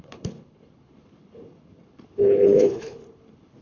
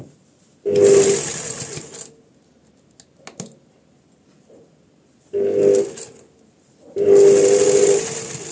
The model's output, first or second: first